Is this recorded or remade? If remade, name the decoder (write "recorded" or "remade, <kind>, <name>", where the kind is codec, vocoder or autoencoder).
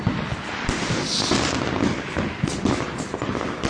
recorded